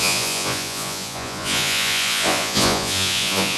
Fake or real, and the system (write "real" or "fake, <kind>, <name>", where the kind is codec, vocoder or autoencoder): fake, vocoder, Vocos